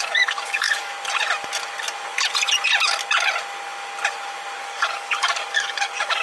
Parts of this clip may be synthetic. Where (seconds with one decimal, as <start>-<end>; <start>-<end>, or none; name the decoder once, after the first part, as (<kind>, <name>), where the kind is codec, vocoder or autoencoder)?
0.0-0.9 (codec, DAC); 4.6-6.2